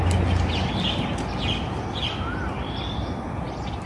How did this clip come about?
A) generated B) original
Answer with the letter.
B